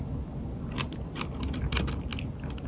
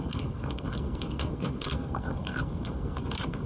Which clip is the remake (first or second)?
second